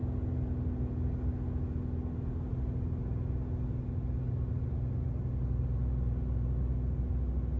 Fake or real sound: real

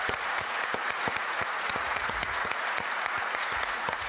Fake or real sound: fake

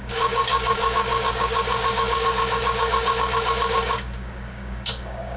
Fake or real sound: fake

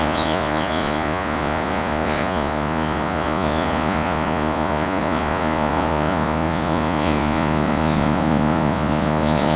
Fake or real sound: fake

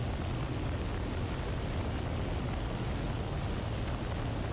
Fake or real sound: real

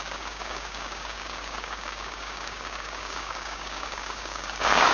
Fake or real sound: fake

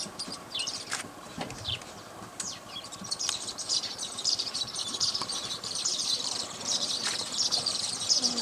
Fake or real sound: fake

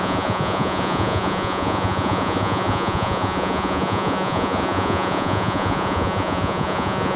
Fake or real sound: fake